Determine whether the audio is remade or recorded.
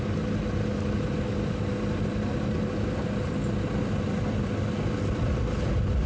recorded